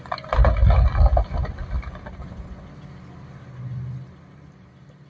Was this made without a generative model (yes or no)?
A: yes